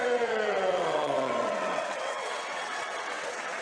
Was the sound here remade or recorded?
remade